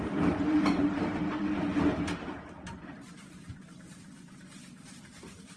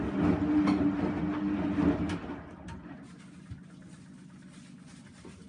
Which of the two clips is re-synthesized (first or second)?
first